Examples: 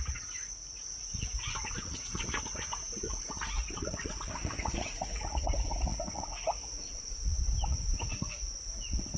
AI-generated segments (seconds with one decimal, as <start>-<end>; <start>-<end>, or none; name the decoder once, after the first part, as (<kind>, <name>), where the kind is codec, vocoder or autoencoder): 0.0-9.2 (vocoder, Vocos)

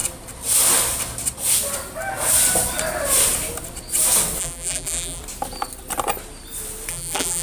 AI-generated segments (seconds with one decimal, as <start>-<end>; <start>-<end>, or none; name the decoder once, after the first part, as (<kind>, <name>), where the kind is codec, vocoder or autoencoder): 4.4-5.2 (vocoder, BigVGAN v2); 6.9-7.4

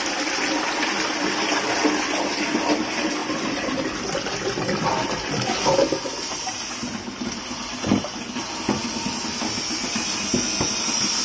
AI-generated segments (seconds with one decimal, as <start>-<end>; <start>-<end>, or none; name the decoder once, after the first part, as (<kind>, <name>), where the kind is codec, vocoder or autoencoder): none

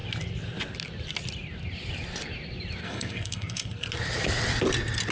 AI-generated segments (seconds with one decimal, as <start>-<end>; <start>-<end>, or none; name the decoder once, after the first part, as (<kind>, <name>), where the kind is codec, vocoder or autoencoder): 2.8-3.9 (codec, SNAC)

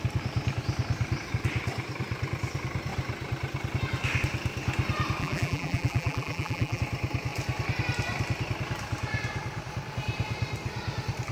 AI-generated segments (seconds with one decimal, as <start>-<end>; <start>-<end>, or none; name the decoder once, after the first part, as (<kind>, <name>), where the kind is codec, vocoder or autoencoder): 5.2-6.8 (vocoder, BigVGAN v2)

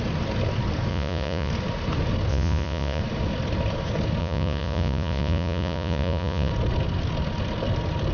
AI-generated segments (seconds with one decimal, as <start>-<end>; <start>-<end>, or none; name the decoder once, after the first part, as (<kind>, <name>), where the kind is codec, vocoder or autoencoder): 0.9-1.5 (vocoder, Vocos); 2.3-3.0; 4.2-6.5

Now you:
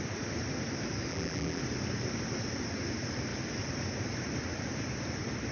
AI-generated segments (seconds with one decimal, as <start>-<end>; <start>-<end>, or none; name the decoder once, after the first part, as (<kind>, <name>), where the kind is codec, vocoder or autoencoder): 1.1-1.6 (vocoder, BigVGAN v2)